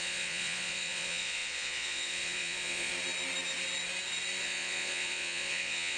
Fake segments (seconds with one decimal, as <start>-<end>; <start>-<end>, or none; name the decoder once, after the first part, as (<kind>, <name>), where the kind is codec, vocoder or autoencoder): 0.0-2.9 (vocoder, Vocos); 4.4-6.0